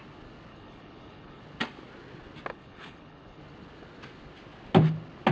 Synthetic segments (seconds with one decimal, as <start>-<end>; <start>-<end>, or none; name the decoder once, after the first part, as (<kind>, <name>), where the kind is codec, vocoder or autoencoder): 0.5-1.4 (codec, HILCodec); 2.5-3.4